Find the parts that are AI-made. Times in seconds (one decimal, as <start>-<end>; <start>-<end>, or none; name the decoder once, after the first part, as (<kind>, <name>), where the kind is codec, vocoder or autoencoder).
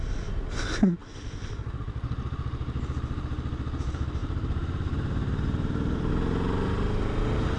4.2-6.1 (vocoder, BigVGAN v2)